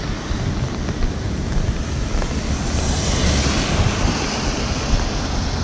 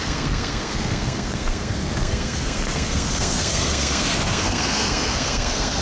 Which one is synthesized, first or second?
second